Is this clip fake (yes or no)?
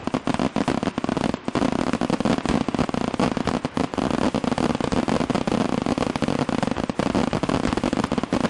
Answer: no